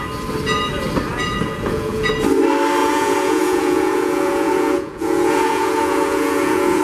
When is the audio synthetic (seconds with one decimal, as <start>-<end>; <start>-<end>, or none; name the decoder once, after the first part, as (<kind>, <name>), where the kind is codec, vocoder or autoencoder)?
1.1-2.1 (vocoder, Vocos); 2.8-6.8